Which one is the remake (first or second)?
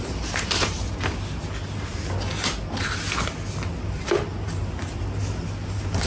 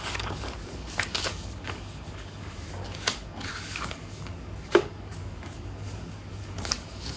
second